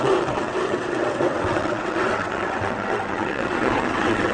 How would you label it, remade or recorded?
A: remade